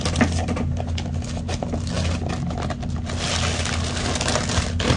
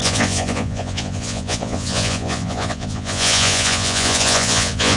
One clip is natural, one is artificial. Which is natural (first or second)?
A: first